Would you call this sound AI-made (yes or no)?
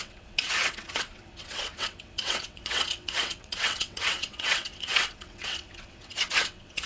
yes